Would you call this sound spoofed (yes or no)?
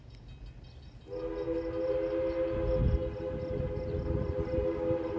no